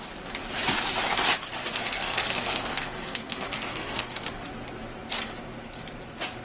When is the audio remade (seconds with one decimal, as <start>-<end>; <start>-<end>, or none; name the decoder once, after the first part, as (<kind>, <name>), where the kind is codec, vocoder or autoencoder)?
1.6-4.4 (codec, SNAC)